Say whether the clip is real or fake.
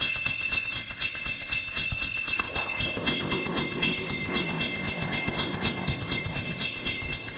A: fake